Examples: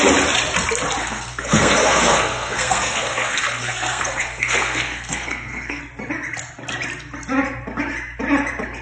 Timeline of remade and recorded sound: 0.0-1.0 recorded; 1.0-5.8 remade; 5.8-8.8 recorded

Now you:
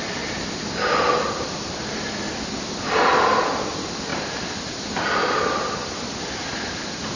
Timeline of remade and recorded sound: 0.0-7.2 recorded

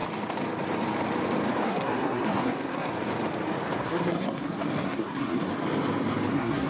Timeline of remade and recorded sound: 0.0-1.6 recorded; 1.6-2.9 remade; 2.9-3.8 recorded; 3.8-5.5 remade; 5.5-6.3 recorded; 6.3-6.7 remade

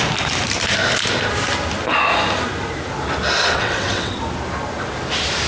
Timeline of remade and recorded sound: 0.0-3.5 recorded; 3.5-4.2 remade; 4.2-5.5 recorded

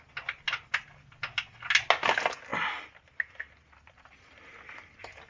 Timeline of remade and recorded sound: 0.0-5.3 recorded

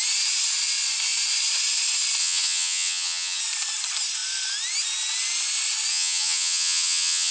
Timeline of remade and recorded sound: 0.0-2.2 recorded; 2.2-3.4 remade; 3.4-5.9 recorded; 5.9-7.3 remade

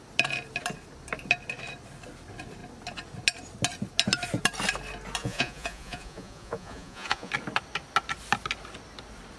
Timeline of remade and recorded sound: 0.0-5.2 recorded; 5.2-7.3 remade; 7.3-9.4 recorded